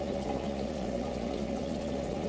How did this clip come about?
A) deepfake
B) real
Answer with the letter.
A